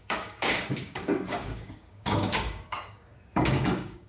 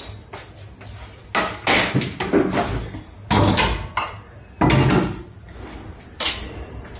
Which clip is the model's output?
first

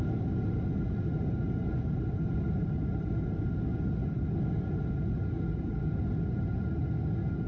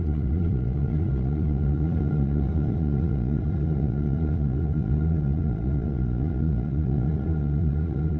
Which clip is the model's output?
second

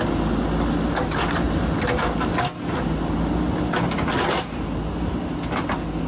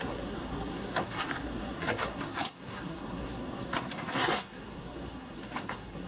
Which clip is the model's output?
second